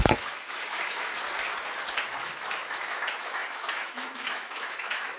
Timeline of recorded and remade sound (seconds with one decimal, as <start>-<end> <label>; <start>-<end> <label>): 0.0-1.1 remade; 1.1-2.2 recorded; 2.2-5.2 remade